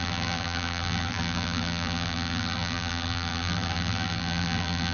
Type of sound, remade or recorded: remade